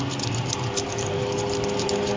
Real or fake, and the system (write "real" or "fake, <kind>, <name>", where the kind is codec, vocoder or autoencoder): real